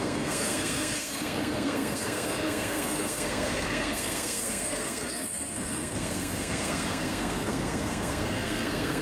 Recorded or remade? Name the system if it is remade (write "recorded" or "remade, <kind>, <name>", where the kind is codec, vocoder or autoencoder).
remade, codec, SNAC